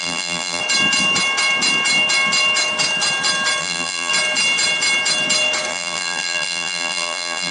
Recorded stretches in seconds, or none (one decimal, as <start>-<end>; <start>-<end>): 0.6-3.6; 4.1-5.7